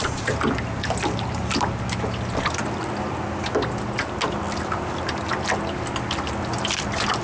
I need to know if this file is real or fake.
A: real